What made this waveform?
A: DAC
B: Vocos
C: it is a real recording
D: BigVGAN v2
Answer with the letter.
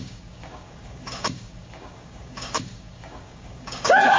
A